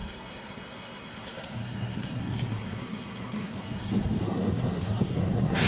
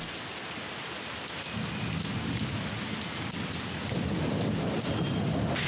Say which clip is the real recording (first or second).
second